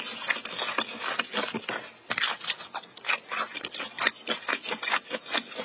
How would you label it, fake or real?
real